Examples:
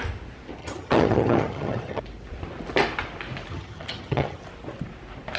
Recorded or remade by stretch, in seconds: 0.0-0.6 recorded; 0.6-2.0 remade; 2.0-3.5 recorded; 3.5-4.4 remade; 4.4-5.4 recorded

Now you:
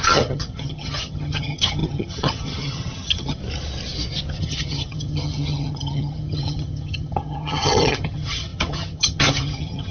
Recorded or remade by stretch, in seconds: 0.0-3.4 remade; 3.4-4.4 recorded; 4.4-9.9 remade

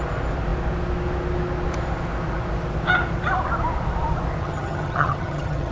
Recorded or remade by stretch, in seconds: 0.0-4.4 recorded; 4.4-5.7 remade

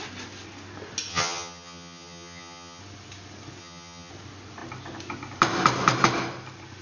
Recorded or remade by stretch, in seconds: 0.0-1.1 recorded; 1.1-2.8 remade; 2.8-3.6 recorded; 3.6-4.1 remade; 4.1-6.8 recorded

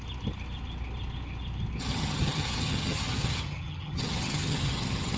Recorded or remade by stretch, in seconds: 0.0-1.9 recorded; 1.9-5.2 remade